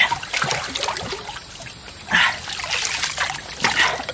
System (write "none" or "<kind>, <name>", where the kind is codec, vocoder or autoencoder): none